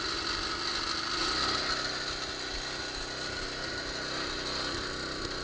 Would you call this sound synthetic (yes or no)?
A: no